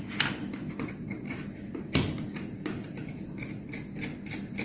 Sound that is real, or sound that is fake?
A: real